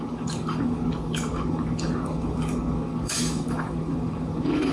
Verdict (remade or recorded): remade